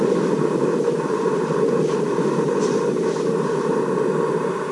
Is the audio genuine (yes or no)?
yes